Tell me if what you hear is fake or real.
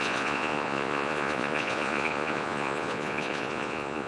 fake